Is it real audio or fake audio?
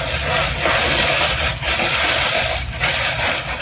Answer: real